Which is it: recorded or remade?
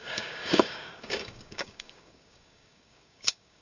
remade